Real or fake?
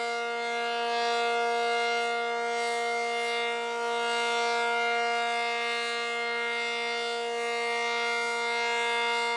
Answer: real